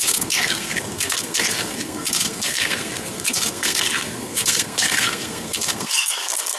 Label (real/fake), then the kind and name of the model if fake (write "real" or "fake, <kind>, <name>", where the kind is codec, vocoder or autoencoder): fake, codec, SNAC